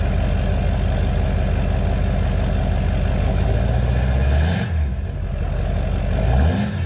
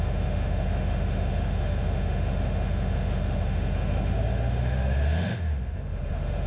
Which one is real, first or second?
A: first